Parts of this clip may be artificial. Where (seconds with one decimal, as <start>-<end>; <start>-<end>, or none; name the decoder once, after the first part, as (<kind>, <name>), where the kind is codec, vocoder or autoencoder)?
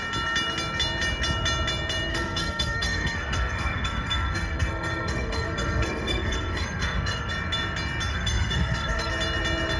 2.1-7.3 (codec, SNAC); 8.1-9.1